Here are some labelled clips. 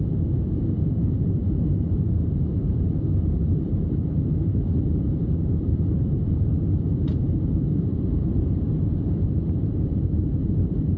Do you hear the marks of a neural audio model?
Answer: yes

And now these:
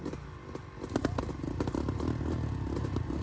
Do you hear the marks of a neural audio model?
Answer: no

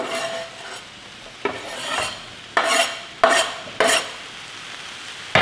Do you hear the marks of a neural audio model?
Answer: no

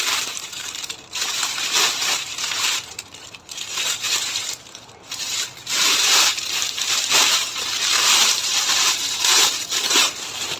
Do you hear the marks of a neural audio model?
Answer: yes